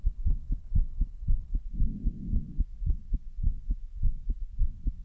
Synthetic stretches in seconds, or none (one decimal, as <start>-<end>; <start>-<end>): 0.0-1.6